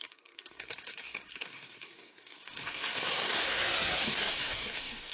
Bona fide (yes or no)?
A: no